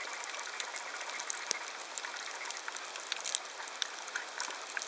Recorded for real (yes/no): yes